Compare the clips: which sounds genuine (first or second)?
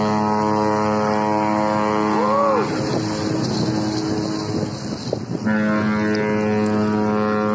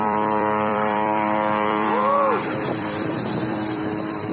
first